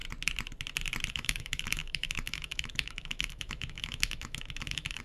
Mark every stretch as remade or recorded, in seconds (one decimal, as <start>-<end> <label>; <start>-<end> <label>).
0.0-1.1 recorded; 1.1-5.0 remade